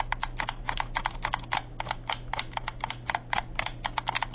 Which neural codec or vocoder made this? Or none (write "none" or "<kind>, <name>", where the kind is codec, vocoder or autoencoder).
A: none